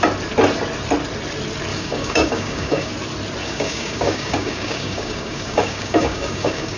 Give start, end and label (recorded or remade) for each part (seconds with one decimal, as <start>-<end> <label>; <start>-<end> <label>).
0.0-1.7 recorded; 1.7-2.9 remade; 2.9-3.4 recorded; 3.4-6.8 remade